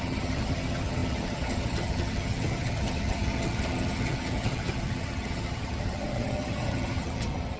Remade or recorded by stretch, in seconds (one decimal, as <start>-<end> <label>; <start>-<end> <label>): 0.0-7.6 remade